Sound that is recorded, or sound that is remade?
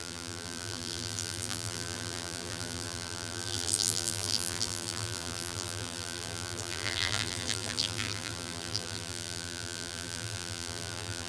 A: remade